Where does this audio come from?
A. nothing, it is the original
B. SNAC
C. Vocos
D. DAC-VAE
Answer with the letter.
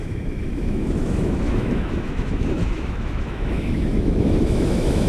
D